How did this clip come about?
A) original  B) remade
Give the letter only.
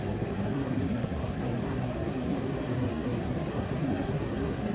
B